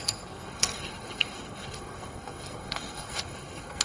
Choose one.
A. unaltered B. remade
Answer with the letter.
B